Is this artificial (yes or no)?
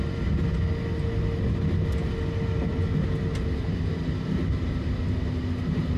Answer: no